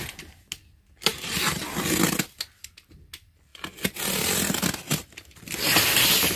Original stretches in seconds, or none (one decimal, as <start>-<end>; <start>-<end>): 0.0-6.4